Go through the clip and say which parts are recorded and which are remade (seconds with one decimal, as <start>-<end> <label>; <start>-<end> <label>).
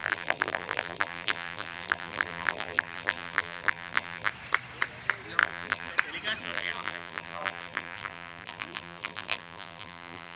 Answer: 0.0-4.3 remade; 4.3-5.4 recorded; 5.4-5.9 remade; 5.9-6.4 recorded; 6.4-10.4 remade